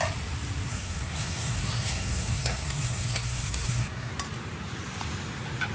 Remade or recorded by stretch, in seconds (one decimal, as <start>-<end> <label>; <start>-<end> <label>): 0.0-0.7 recorded; 0.7-4.1 remade; 4.1-5.7 recorded